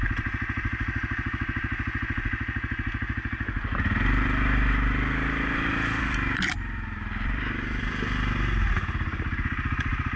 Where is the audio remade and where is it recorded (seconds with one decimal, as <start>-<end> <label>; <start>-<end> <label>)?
0.0-5.7 recorded; 5.7-7.9 remade; 7.9-10.2 recorded

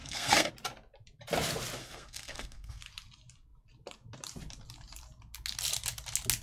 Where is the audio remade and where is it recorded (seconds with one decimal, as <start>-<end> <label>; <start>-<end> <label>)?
0.0-0.5 remade; 0.5-1.8 recorded; 1.8-2.8 remade; 2.8-6.4 recorded

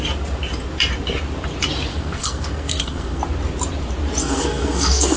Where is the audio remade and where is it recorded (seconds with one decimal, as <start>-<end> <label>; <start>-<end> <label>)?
0.0-1.9 recorded; 1.9-3.2 remade; 3.2-4.2 recorded; 4.2-5.2 remade

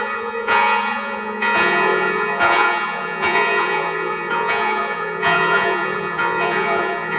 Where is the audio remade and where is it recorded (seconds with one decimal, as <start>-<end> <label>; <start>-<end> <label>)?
0.0-7.2 remade